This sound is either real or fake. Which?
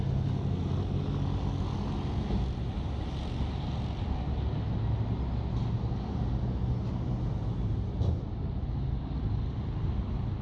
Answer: real